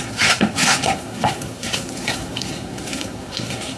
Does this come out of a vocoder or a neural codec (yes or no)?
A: yes